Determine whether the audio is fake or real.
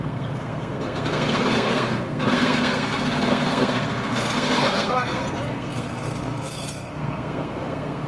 fake